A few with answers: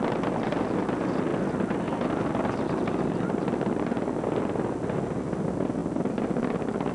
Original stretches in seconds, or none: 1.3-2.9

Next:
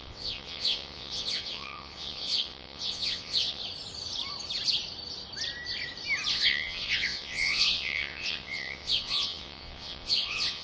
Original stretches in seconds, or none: 3.6-6.3

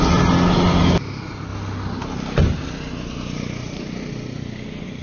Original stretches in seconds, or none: 0.0-5.0

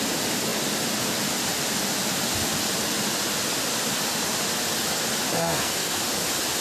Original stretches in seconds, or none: 0.0-5.3; 6.0-6.6